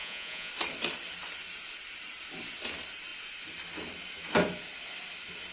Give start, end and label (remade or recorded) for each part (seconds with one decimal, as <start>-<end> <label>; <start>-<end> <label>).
0.0-0.5 remade; 0.5-5.5 recorded